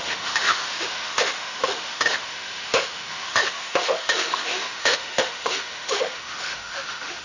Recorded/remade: remade